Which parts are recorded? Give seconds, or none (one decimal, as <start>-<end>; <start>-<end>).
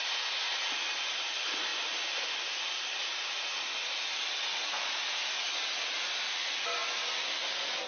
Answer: 0.0-7.9